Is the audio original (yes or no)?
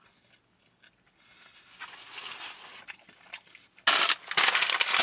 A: yes